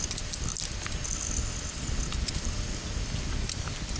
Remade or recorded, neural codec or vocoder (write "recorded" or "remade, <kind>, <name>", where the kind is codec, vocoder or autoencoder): recorded